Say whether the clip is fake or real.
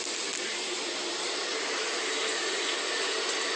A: real